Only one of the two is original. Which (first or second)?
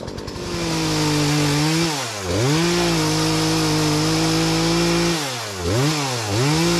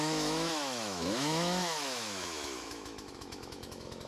first